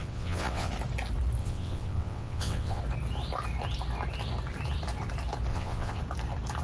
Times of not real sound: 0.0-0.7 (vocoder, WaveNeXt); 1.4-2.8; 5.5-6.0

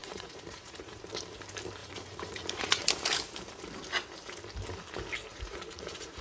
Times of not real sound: 0.0-1.0 (vocoder, Vocos); 1.8-2.8; 5.3-6.2

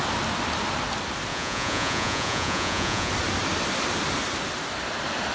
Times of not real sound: 1.3-3.1 (vocoder, Vocos)

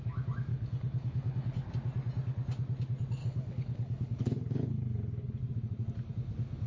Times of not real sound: 0.5-1.7 (codec, HILCodec); 3.2-5.4

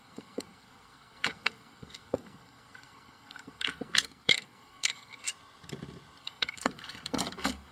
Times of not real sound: 0.0-5.3 (codec, SNAC); 6.2-7.7

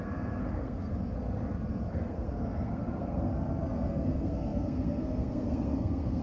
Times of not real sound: 0.0-0.9 (codec, SNAC); 1.9-3.3; 3.9-6.2

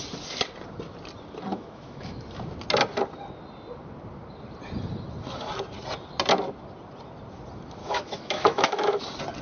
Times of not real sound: 1.5-2.2 (autoencoder, DAC-VAE); 7.8-9.0